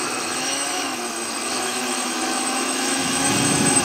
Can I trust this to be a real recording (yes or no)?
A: no